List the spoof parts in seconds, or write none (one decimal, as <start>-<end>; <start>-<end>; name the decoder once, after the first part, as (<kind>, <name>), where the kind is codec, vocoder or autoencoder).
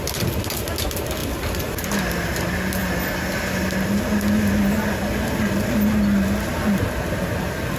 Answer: none